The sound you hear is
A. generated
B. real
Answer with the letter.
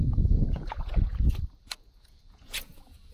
A